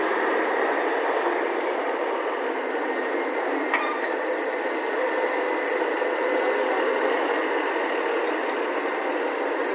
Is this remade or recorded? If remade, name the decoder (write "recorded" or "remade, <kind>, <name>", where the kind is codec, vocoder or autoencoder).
recorded